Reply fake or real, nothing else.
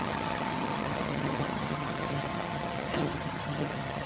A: fake